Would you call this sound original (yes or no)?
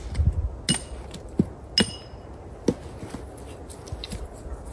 yes